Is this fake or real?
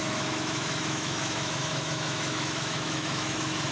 fake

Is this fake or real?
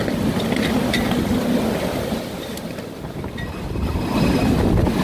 real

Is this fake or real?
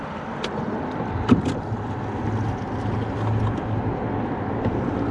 real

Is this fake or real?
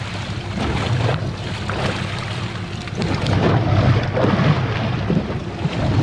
real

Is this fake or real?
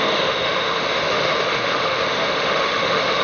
fake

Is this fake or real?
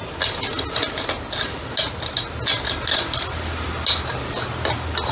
real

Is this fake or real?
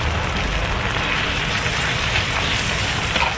real